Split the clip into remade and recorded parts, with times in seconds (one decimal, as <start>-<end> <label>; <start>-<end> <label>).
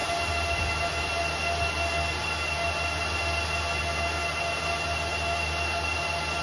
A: 0.0-6.4 recorded